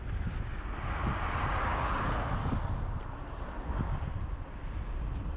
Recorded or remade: recorded